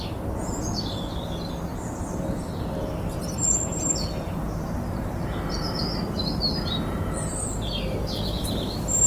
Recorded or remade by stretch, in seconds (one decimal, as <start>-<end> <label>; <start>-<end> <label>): 0.0-3.2 recorded; 3.2-6.0 remade; 6.0-9.1 recorded